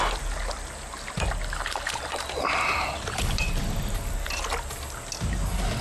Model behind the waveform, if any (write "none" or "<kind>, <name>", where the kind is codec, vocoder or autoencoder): none